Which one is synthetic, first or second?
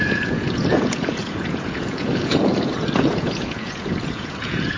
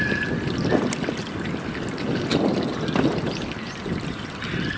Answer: first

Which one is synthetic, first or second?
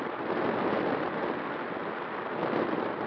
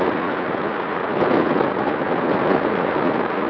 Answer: second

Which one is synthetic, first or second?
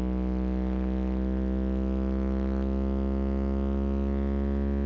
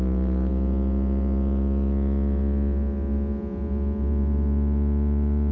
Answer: second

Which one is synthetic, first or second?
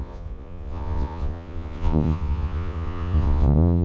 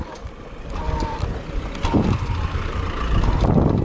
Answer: first